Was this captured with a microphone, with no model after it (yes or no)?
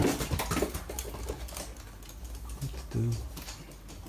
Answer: yes